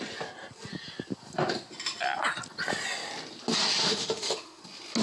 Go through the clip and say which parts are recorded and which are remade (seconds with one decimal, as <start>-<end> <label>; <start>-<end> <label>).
0.0-3.8 recorded; 3.8-4.6 remade; 4.6-5.0 recorded